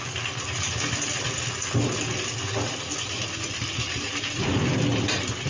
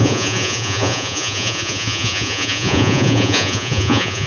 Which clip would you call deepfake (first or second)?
second